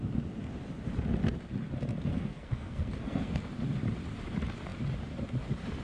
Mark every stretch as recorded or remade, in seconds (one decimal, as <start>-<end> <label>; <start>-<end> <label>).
0.0-2.1 recorded; 2.1-3.4 remade; 3.4-5.8 recorded